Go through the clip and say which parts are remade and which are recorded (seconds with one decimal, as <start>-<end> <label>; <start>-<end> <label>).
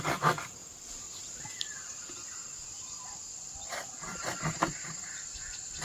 0.0-5.8 recorded